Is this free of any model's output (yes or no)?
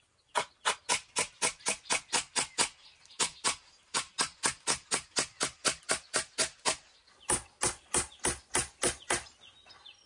yes